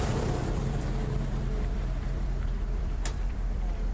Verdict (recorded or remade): remade